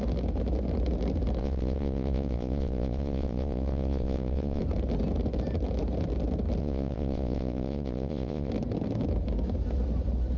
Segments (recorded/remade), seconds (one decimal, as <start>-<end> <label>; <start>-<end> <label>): 0.0-1.4 recorded; 1.4-4.6 remade; 4.6-6.6 recorded; 6.6-8.5 remade; 8.5-10.4 recorded